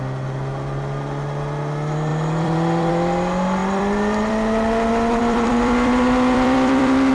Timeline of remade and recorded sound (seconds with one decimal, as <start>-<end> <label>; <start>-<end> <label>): 0.0-2.1 recorded; 2.1-2.9 remade; 2.9-3.6 recorded; 3.6-4.3 remade; 4.3-5.2 recorded; 5.2-7.1 remade